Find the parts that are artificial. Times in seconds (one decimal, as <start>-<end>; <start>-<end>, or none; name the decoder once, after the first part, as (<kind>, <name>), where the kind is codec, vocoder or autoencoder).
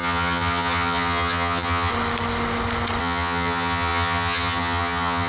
0.0-1.9 (vocoder, HiFi-GAN); 3.0-5.3